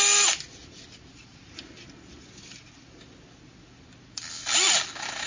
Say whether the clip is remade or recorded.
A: recorded